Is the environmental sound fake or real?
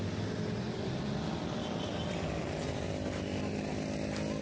real